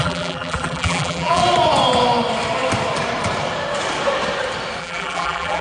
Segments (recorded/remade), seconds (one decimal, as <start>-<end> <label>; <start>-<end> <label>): 0.0-1.4 remade; 1.4-4.8 recorded; 4.8-5.6 remade